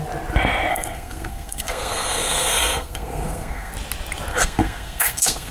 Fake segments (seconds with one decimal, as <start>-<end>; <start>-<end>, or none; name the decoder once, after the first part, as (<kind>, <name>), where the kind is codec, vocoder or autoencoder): 0.7-3.7 (codec, SNAC); 4.3-5.5